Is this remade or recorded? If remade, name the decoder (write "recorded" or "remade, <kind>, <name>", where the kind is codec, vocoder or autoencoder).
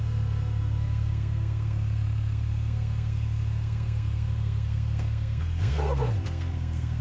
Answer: remade, codec, SNAC